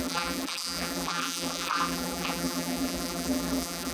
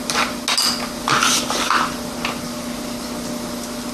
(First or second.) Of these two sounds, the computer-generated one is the first